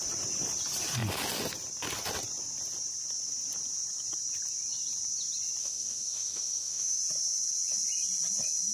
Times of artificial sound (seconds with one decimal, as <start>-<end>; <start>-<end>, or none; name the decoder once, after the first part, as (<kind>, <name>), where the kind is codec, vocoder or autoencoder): 5.6-7.0 (autoencoder, DAC-VAE)